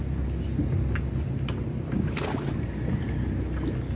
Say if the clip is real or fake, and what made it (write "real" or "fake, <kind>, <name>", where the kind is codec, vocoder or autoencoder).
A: real